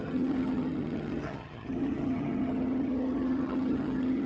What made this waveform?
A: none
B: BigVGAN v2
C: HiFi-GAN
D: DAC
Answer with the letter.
C